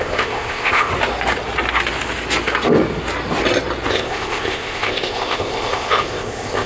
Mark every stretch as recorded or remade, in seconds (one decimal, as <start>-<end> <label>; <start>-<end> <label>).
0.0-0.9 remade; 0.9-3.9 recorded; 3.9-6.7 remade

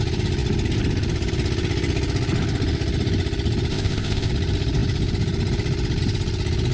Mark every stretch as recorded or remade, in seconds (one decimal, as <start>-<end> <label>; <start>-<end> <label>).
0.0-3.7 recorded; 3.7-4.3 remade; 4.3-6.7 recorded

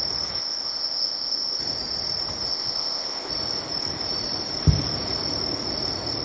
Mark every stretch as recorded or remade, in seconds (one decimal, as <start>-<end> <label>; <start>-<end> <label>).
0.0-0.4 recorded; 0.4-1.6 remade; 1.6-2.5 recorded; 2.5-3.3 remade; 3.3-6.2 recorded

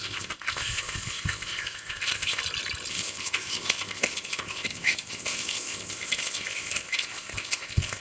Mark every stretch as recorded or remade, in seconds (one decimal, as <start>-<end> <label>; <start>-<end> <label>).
0.0-2.4 remade; 2.4-2.9 recorded; 2.9-8.0 remade

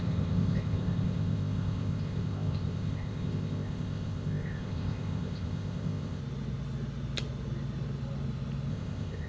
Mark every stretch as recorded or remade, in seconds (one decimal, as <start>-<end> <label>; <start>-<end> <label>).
0.0-6.2 remade; 6.2-8.7 recorded; 8.7-9.3 remade